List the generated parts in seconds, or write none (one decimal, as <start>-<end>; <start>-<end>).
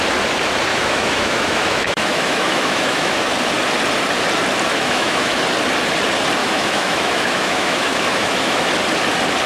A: 0.7-3.3; 4.7-5.4; 6.4-8.7